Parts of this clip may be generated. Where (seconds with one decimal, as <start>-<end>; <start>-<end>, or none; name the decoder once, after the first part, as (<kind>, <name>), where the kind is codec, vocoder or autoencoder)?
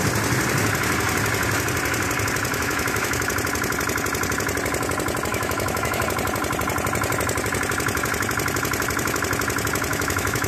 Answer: 2.5-3.3 (autoencoder, DAC-VAE); 5.3-6.0; 9.9-10.5